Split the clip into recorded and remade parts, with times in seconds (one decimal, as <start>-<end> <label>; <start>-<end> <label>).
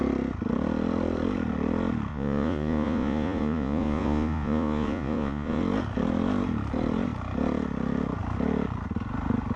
0.0-2.1 recorded; 2.1-5.6 remade; 5.6-9.6 recorded